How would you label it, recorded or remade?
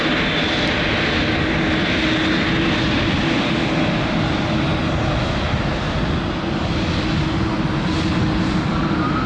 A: recorded